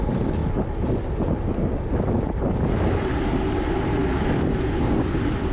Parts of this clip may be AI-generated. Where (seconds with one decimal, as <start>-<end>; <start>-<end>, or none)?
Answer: none